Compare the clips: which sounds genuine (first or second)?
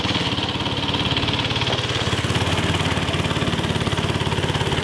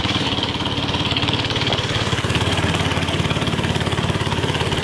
first